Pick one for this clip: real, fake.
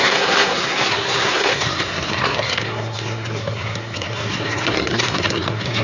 fake